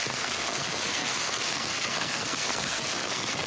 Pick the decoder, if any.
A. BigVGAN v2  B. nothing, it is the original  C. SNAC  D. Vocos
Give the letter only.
C